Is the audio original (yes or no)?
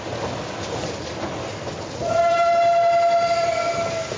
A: yes